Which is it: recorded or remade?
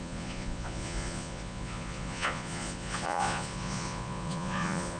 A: remade